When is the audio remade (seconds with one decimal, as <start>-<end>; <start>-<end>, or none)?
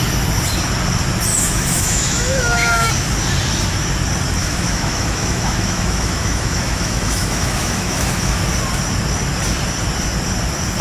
1.3-2.9; 4.4-8.4